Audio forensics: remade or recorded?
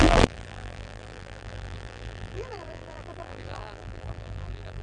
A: remade